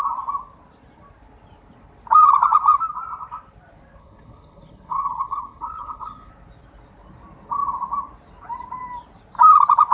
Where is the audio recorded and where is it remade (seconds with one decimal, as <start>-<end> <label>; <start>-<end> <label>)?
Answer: 0.0-4.0 recorded; 4.0-6.3 remade; 6.3-9.9 recorded